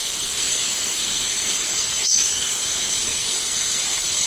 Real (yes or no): no